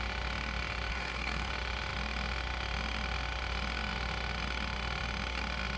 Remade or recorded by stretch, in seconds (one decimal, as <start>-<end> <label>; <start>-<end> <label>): 0.0-0.9 recorded; 0.9-1.5 remade; 1.5-5.8 recorded